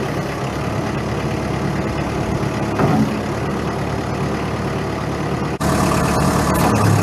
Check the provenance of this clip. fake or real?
real